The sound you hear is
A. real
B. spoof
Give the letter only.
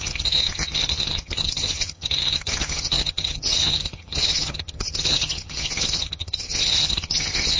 B